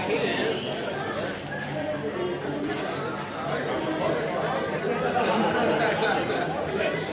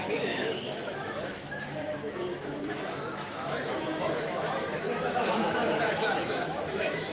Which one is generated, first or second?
second